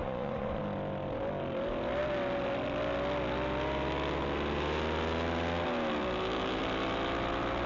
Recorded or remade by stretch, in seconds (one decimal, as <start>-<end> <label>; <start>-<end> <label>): 0.0-0.6 remade; 0.6-7.7 recorded